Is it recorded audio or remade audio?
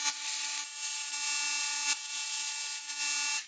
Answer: recorded